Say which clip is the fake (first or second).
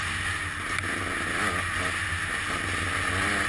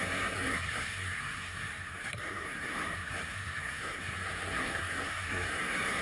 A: second